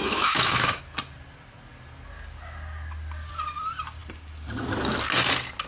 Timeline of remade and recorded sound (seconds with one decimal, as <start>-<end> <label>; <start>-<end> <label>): 0.0-0.8 remade; 0.8-5.7 recorded